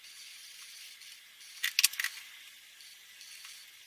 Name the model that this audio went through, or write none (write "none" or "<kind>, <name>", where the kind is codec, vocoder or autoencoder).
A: none